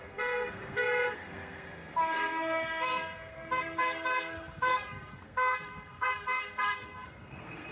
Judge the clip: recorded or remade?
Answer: remade